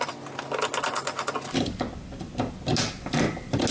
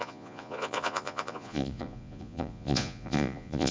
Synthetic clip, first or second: second